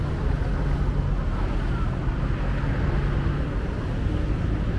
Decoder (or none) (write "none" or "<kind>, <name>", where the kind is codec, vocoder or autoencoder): none